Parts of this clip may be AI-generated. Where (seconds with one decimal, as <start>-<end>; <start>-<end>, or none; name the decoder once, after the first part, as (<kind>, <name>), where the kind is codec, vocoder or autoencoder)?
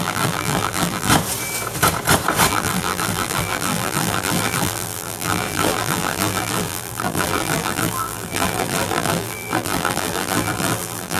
0.0-1.1 (vocoder, BigVGAN v2); 2.5-11.2